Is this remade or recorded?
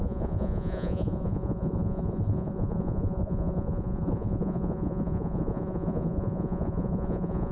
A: remade